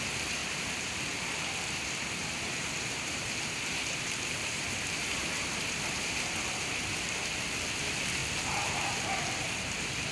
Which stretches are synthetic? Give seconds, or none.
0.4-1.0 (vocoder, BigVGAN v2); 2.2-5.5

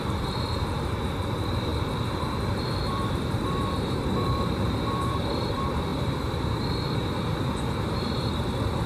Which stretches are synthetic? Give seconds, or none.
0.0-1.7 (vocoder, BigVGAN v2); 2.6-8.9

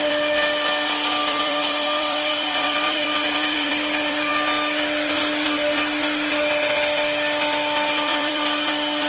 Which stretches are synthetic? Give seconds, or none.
1.2-4.3 (vocoder, BigVGAN v2); 8.1-8.7